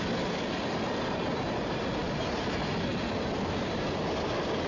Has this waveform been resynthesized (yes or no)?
no